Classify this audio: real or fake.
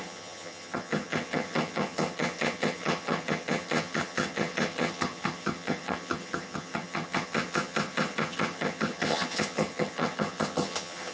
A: fake